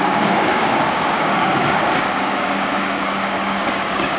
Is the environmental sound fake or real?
fake